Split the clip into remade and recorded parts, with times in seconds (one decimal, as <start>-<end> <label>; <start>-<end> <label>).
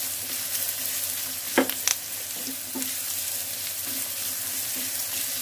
0.0-1.9 recorded; 1.9-5.4 remade